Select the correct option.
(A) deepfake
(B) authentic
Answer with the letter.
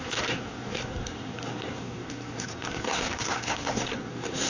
A